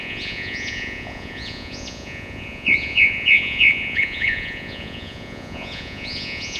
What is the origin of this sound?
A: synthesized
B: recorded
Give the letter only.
A